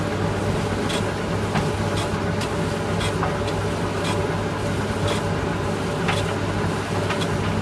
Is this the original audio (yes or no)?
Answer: yes